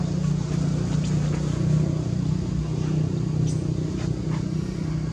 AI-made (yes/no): no